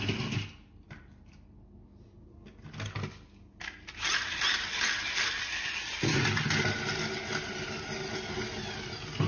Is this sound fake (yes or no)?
no